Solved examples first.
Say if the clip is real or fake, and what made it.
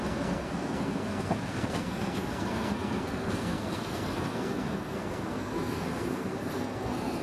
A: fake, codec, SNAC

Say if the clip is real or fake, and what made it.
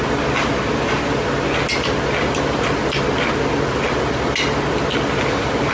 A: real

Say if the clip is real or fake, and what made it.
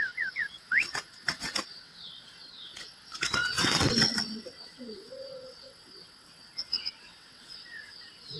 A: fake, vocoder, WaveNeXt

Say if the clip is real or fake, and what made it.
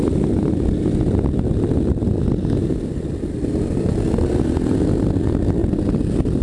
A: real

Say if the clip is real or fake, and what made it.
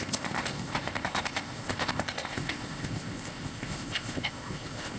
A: fake, codec, ZipCodec